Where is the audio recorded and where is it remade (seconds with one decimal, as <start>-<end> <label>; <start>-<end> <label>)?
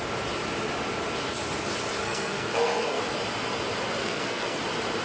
0.0-2.0 recorded; 2.0-3.0 remade; 3.0-4.0 recorded; 4.0-4.6 remade; 4.6-5.0 recorded